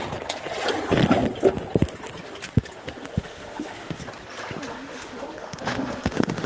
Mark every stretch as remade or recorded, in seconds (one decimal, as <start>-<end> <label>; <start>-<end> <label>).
0.0-3.1 recorded; 3.1-4.0 remade; 4.0-4.7 recorded; 4.7-6.5 remade